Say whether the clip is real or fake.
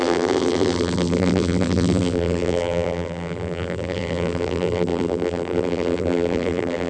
fake